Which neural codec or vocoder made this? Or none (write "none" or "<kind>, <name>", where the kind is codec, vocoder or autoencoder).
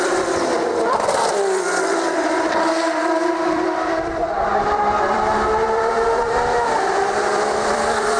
vocoder, BigVGAN v2